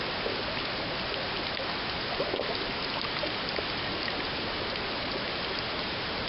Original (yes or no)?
yes